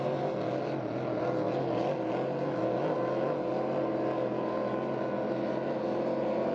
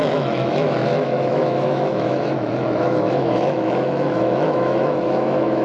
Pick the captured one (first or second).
first